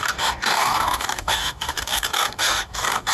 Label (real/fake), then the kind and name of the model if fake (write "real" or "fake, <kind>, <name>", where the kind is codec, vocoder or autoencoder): fake, codec, DAC